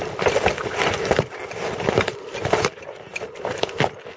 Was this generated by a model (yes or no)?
no